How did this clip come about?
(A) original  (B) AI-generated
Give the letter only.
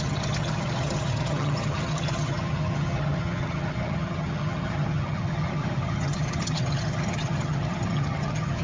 B